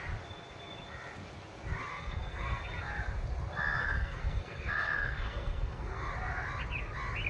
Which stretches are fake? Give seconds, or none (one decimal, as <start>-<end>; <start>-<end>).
1.9-2.6; 3.8-6.1